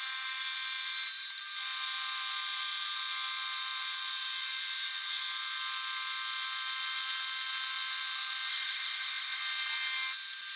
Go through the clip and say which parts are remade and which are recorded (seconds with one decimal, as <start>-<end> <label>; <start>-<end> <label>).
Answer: 0.0-8.5 recorded; 8.5-9.4 remade; 9.4-10.6 recorded